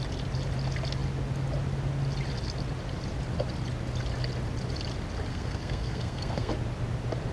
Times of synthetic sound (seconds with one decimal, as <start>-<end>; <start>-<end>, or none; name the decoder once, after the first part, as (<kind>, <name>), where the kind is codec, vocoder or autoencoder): 5.3-6.5 (codec, SNAC)